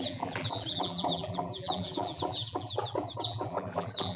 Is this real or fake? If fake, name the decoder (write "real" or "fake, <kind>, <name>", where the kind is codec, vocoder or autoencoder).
fake, vocoder, BigVGAN v2